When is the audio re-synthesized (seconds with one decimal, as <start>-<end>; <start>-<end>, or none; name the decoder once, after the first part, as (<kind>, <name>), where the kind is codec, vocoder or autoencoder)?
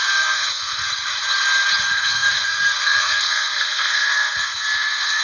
0.0-0.8 (codec, SNAC); 1.8-5.2